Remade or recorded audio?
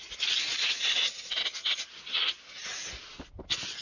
recorded